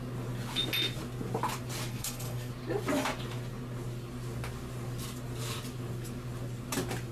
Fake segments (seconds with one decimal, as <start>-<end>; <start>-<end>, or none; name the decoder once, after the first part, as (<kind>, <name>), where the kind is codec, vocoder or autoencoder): 1.9-2.5 (codec, SNAC)